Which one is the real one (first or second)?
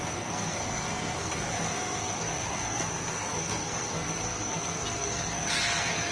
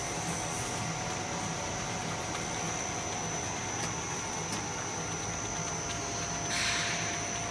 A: second